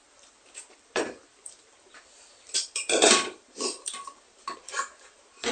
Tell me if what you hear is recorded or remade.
remade